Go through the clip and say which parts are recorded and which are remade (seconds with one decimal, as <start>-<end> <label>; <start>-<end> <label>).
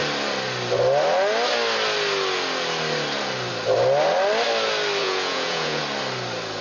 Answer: 0.0-5.0 recorded; 5.0-5.8 remade; 5.8-6.6 recorded